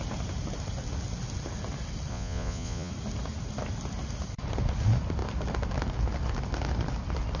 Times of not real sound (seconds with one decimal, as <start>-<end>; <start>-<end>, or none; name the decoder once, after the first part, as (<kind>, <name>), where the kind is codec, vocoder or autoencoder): 2.1-2.9 (vocoder, Vocos)